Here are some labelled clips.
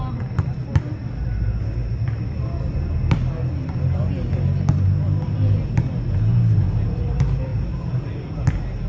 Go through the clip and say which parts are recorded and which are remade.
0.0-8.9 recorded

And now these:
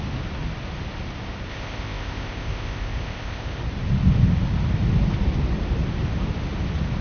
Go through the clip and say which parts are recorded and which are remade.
0.0-1.5 recorded; 1.5-3.6 remade; 3.6-7.0 recorded

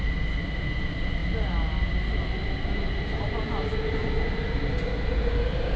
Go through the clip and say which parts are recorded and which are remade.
0.0-5.8 recorded

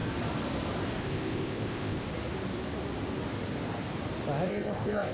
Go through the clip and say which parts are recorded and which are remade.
0.0-1.0 recorded; 1.0-2.1 remade; 2.1-4.5 recorded; 4.5-5.1 remade

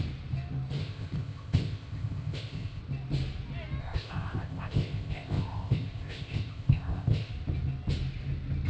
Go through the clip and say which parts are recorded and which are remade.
0.0-0.8 recorded; 0.8-2.8 remade; 2.8-3.8 recorded; 3.8-7.3 remade; 7.3-8.7 recorded

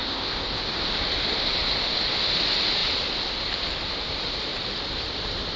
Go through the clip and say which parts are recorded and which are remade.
0.0-0.6 remade; 0.6-5.6 recorded